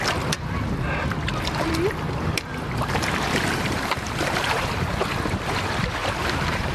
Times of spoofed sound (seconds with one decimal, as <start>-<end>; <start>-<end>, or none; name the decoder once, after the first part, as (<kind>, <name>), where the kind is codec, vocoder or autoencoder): 2.5-4.9 (vocoder, BigVGAN v2); 6.0-6.7

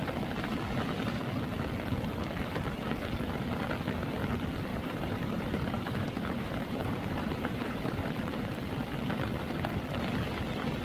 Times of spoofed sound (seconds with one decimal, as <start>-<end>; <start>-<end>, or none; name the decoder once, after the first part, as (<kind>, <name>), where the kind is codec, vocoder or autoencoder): 4.7-8.1 (vocoder, BigVGAN v2)

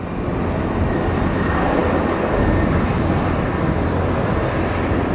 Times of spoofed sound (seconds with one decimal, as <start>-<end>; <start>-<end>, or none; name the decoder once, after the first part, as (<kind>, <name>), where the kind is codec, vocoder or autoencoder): none

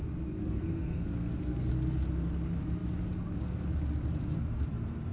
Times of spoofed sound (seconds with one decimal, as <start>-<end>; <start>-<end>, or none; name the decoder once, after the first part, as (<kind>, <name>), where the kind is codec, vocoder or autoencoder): 0.4-1.7 (codec, SNAC)